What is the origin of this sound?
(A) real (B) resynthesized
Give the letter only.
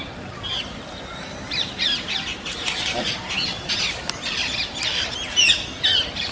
A